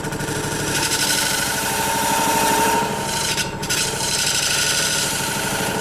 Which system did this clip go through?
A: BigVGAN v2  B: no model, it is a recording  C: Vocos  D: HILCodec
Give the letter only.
A